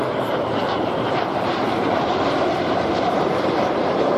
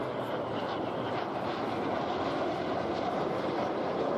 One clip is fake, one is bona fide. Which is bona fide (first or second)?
second